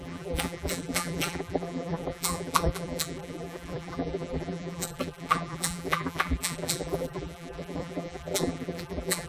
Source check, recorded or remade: remade